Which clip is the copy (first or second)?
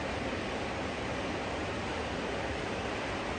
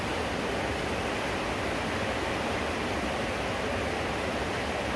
first